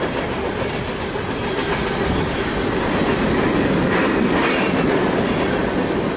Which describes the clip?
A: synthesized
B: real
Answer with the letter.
B